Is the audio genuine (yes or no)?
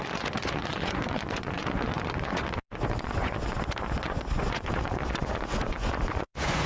no